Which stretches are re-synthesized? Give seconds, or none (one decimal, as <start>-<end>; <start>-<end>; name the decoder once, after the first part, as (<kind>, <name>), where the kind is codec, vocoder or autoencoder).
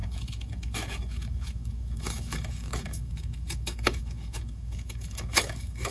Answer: 0.0-5.9 (autoencoder, DAC-VAE)